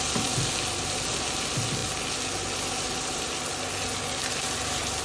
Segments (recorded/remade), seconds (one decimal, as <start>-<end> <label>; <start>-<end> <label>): 0.0-5.0 recorded